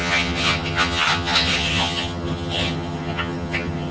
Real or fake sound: fake